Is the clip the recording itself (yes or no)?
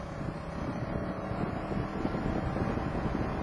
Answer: yes